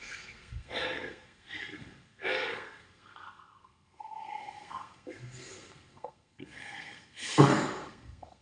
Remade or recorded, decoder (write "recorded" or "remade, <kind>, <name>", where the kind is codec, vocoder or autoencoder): remade, codec, SNAC